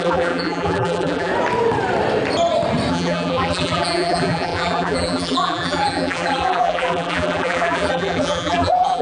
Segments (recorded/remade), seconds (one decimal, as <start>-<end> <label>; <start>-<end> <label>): 0.0-1.3 remade; 1.3-2.9 recorded; 2.9-9.0 remade